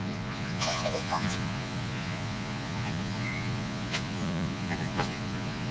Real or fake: fake